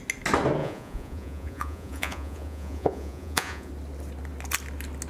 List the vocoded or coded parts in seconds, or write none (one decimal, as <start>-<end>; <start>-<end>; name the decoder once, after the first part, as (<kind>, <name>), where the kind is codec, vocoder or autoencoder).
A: 0.6-3.7 (vocoder, Vocos)